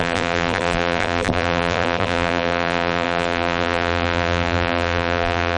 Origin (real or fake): fake